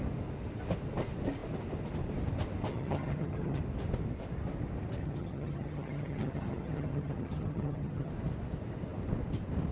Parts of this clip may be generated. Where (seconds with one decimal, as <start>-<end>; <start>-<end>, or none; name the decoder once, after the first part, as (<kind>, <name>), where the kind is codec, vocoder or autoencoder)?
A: 2.7-3.6 (vocoder, HiFi-GAN); 5.0-8.1